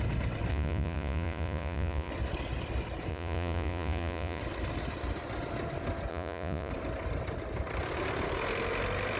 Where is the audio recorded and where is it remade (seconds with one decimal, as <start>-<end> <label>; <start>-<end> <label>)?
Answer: 0.0-0.5 recorded; 0.5-2.1 remade; 2.1-3.1 recorded; 3.1-4.4 remade; 4.4-6.1 recorded; 6.1-6.7 remade; 6.7-9.2 recorded